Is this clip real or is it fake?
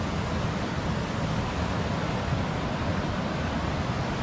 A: real